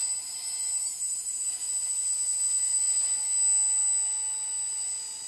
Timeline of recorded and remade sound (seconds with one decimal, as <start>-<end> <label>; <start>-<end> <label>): 0.0-3.2 remade; 3.2-5.3 recorded